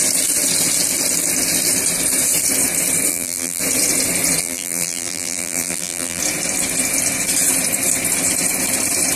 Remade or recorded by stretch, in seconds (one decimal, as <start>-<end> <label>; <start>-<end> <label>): 0.0-3.1 recorded; 3.1-3.6 remade; 3.6-4.4 recorded; 4.4-6.2 remade; 6.2-9.2 recorded